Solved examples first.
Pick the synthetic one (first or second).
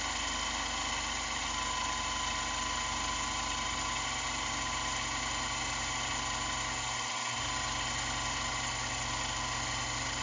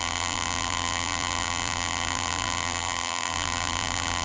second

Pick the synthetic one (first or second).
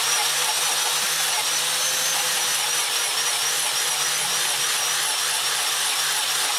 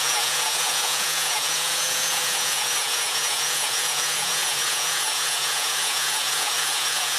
second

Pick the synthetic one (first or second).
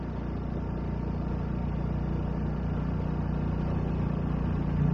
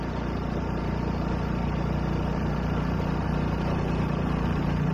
second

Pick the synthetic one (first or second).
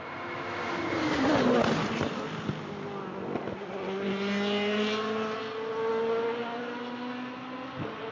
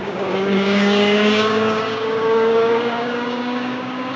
second